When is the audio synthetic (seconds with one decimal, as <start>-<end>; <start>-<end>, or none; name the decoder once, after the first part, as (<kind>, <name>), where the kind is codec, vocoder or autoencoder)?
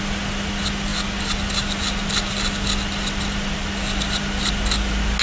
none